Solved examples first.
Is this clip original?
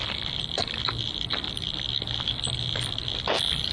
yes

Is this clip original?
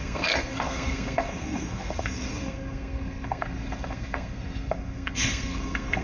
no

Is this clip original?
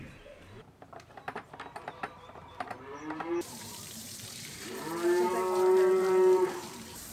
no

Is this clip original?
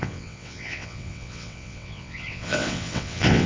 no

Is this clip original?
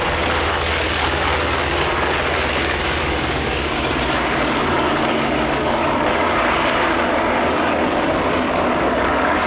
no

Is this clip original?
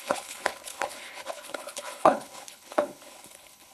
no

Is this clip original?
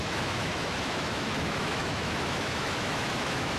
no